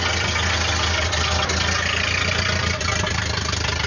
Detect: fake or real real